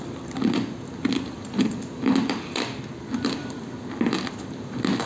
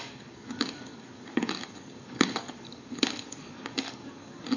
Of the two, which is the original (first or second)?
first